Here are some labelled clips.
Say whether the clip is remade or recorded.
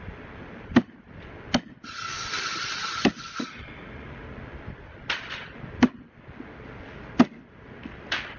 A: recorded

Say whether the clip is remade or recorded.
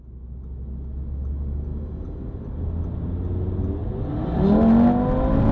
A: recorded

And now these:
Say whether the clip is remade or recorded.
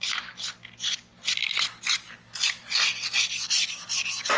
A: recorded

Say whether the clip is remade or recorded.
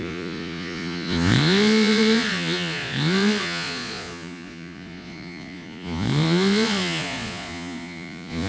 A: remade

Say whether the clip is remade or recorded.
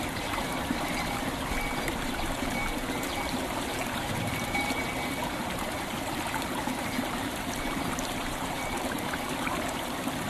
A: remade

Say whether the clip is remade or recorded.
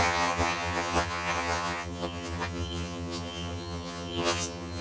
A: remade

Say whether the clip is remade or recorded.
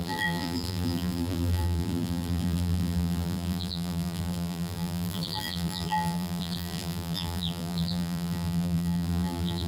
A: remade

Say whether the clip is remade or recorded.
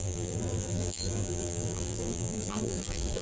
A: remade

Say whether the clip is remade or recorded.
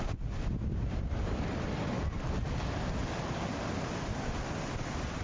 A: recorded